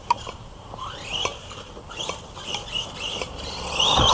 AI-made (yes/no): no